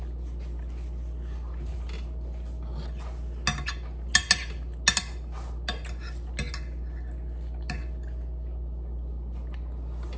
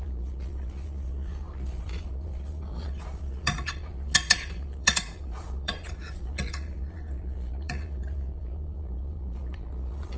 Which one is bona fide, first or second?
first